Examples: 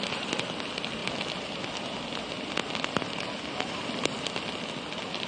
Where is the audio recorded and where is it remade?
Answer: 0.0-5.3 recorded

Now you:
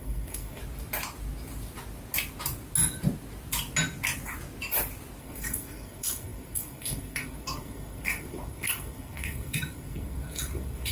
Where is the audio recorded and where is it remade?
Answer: 0.0-0.6 remade; 0.6-5.2 recorded; 5.2-10.9 remade